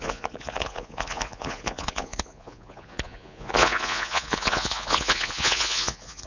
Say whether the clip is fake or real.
fake